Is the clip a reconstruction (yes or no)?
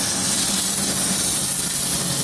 no